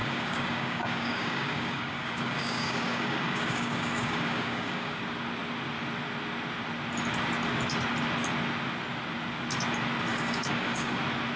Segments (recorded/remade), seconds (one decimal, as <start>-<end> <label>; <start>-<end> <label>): 0.0-5.0 remade; 5.0-10.1 recorded; 10.1-11.0 remade; 11.0-11.4 recorded